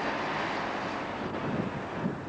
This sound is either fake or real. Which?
real